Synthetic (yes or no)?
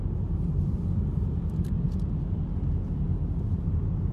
no